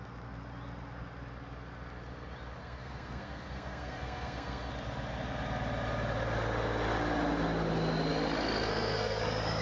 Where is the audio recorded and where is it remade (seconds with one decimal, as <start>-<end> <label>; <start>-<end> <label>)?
0.0-2.6 recorded; 2.6-4.7 remade; 4.7-8.7 recorded; 8.7-9.2 remade; 9.2-9.6 recorded